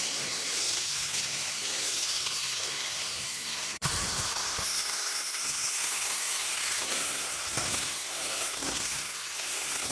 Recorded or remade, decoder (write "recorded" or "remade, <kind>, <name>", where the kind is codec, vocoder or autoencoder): remade, codec, SNAC